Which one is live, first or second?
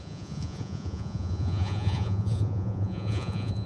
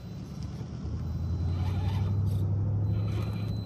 second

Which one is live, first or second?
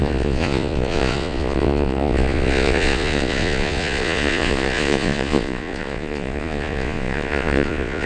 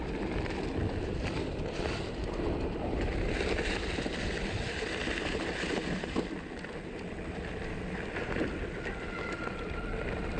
second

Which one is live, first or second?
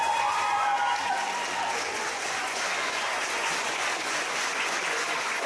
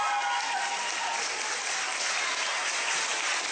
second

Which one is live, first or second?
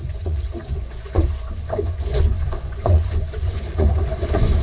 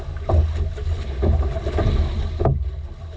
second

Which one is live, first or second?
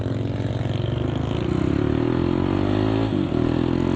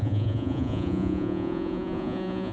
first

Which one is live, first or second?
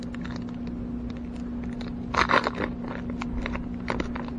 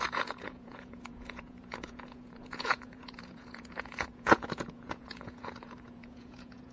first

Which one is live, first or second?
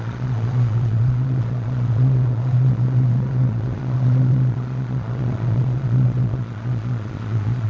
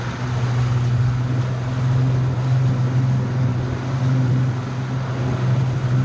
second